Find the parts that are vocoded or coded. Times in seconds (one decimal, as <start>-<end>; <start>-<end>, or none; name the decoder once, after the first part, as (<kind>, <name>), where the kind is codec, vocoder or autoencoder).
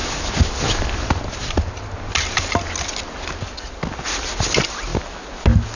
none